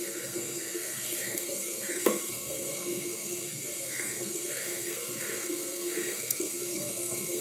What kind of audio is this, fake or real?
fake